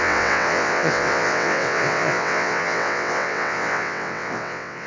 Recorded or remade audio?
remade